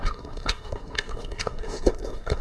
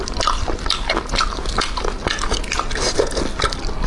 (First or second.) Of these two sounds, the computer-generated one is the first